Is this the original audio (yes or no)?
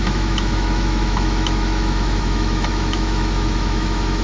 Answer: no